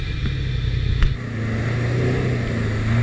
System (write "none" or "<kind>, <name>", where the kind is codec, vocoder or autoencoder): none